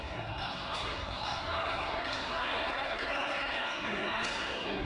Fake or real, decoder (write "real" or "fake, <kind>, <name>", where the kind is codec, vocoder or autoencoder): fake, codec, SNAC